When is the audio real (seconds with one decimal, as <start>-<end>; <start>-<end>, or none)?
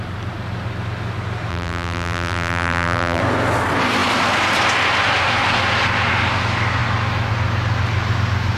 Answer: 0.0-1.5; 3.2-8.6